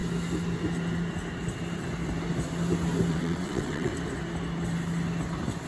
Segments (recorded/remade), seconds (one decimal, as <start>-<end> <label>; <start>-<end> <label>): 0.0-3.1 recorded; 3.1-3.9 remade; 3.9-5.7 recorded